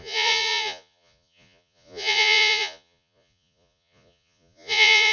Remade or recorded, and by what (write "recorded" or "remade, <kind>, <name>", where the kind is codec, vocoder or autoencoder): remade, vocoder, Vocos